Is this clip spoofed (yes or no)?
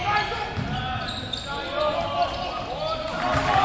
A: no